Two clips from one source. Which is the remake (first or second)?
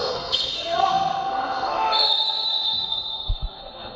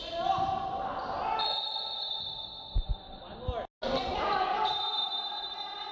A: first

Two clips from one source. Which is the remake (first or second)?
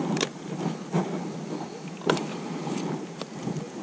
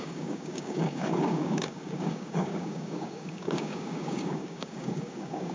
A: second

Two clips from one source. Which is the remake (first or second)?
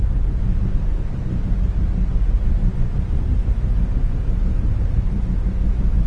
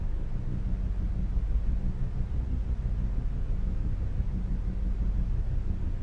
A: first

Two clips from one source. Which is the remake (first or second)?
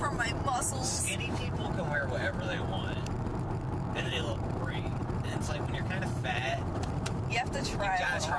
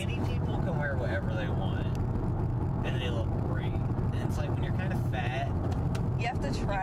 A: first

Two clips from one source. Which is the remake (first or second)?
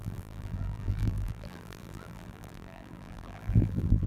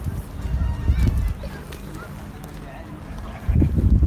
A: first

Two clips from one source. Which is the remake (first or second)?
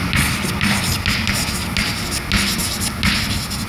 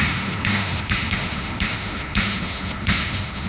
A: second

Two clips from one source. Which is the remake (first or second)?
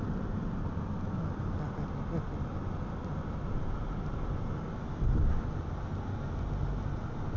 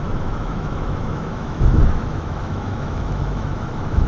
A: second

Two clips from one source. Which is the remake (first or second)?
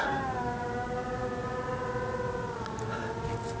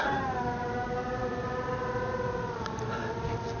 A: second